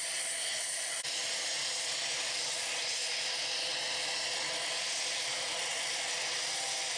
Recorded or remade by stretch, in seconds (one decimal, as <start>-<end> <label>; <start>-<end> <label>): 0.0-7.0 recorded